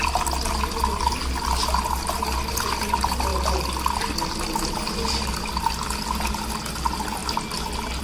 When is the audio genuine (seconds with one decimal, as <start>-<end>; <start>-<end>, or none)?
0.0-8.0